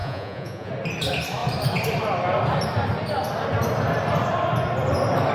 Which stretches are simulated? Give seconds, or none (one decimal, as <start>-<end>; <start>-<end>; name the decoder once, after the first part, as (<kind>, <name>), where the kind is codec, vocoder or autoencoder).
0.0-0.7 (vocoder, Vocos)

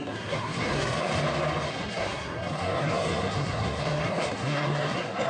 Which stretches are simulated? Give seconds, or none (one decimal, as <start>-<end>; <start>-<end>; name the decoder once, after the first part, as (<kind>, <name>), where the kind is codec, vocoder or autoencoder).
0.0-1.1 (codec, SNAC); 1.7-5.3

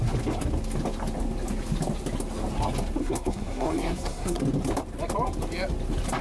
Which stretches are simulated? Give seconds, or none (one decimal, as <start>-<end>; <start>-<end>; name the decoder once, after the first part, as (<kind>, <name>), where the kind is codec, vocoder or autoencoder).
3.0-4.4 (codec, SNAC)

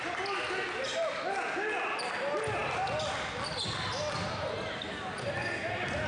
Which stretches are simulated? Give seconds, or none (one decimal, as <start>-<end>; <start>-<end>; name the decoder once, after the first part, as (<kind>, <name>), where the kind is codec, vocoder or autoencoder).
none

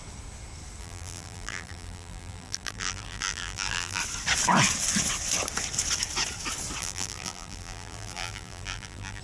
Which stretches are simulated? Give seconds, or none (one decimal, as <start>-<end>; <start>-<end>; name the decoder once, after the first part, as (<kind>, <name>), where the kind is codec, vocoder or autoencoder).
0.8-4.0 (vocoder, BigVGAN v2); 6.8-9.2

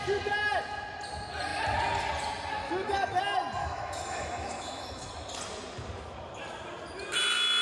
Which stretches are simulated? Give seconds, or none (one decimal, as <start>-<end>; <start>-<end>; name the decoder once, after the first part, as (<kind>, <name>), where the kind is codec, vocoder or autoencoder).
2.6-3.2 (autoencoder, DAC-VAE); 3.6-5.1

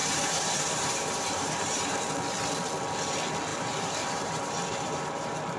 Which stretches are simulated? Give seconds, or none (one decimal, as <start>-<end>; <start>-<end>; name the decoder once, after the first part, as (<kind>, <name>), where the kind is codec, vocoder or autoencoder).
0.0-2.1 (vocoder, BigVGAN v2); 3.5-5.6